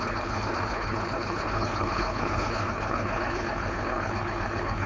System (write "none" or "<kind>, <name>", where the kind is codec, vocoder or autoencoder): codec, HILCodec